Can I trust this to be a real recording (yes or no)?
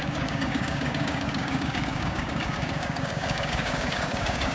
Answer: no